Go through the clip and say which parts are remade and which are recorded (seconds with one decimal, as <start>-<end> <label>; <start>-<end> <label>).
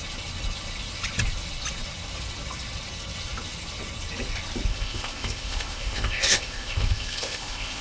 0.0-4.7 recorded; 4.7-7.8 remade